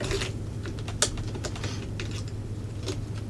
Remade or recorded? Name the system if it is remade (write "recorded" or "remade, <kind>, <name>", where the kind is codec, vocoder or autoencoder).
recorded